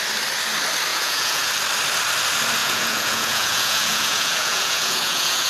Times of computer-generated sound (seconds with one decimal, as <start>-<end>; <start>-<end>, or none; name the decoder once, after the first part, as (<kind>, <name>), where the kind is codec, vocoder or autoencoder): 0.9-1.5 (vocoder, Vocos); 2.6-5.5